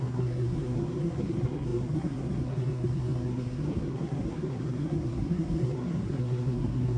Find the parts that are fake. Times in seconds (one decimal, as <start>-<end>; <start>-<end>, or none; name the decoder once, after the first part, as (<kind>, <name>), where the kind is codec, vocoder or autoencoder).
0.0-7.0 (codec, SNAC)